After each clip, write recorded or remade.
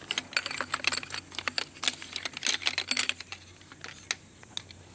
recorded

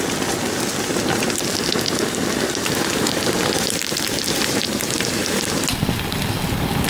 recorded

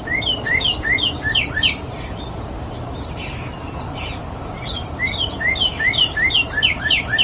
remade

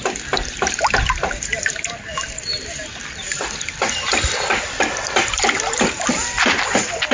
remade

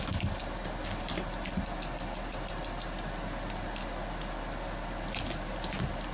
recorded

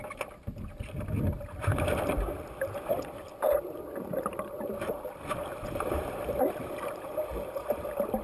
remade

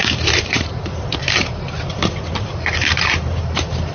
remade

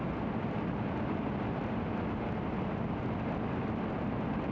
recorded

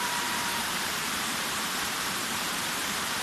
remade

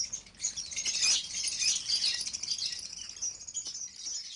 recorded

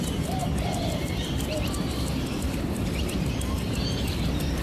remade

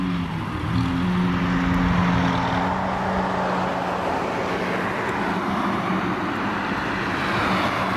recorded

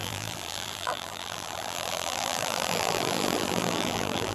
remade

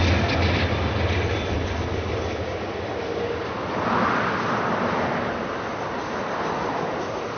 recorded